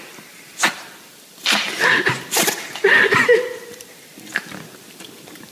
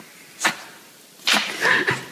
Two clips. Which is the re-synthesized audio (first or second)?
first